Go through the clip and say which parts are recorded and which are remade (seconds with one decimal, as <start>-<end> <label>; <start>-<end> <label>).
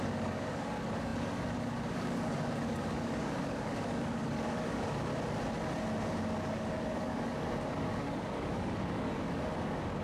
0.0-5.1 remade; 5.1-6.5 recorded; 6.5-10.0 remade